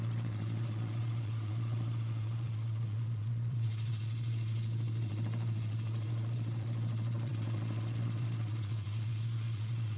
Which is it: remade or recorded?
remade